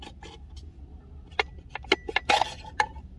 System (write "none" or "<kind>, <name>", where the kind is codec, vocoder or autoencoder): none